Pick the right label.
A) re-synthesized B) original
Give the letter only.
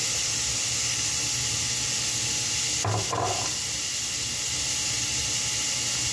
B